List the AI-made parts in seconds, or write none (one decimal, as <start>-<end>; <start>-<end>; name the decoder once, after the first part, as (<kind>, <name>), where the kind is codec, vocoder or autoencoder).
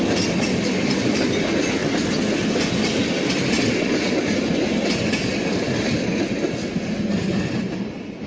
none